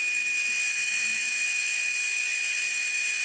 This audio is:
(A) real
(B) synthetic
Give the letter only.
B